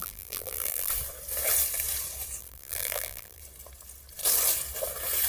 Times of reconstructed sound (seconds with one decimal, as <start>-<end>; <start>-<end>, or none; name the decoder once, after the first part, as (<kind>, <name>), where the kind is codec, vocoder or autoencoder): 0.0-0.9 (vocoder, BigVGAN v2); 2.4-3.4